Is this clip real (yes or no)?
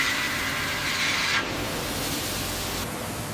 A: yes